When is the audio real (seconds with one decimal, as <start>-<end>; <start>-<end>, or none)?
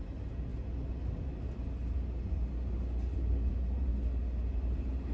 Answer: 0.5-3.5; 3.9-4.5